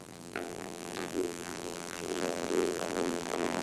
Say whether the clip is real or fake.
fake